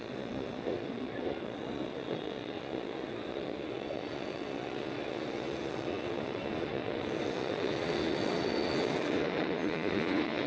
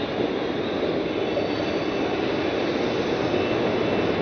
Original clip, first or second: second